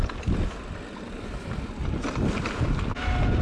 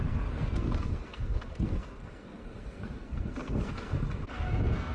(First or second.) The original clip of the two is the first